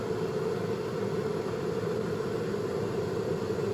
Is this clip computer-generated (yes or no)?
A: no